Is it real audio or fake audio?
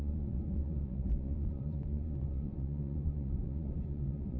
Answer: fake